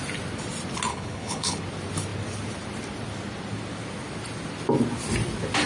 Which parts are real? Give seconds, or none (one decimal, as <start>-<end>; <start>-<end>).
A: 0.0-0.9; 1.6-5.7